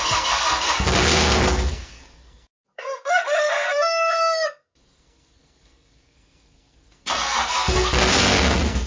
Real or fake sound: fake